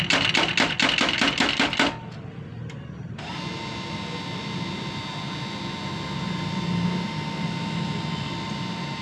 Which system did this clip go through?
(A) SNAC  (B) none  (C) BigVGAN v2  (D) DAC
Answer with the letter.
B